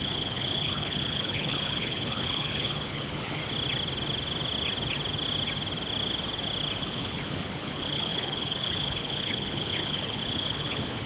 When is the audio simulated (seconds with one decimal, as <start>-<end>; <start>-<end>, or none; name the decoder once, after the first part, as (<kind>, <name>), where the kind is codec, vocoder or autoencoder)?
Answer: 0.0-3.4 (codec, HILCodec); 6.8-11.1